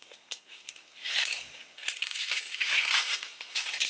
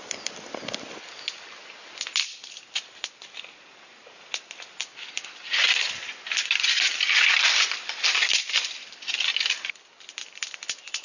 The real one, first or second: second